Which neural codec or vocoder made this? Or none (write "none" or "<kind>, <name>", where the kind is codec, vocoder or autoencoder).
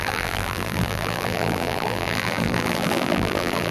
vocoder, BigVGAN v2